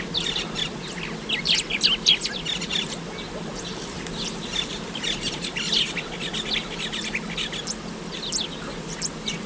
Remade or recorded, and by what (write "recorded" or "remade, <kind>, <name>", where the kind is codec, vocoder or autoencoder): recorded